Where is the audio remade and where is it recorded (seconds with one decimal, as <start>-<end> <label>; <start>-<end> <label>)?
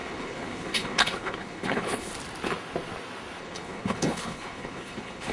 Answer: 0.0-2.1 remade; 2.1-3.4 recorded; 3.4-5.3 remade